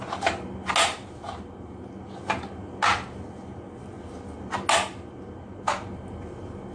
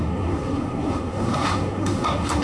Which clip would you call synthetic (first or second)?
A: second